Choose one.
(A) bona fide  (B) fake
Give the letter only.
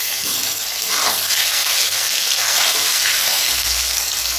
B